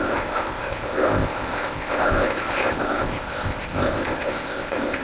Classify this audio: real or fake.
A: fake